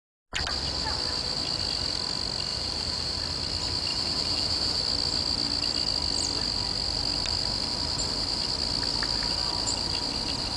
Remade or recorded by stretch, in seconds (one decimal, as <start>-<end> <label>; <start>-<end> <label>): 0.0-2.5 recorded; 2.5-3.2 remade; 3.2-3.9 recorded; 3.9-4.8 remade; 4.8-10.6 recorded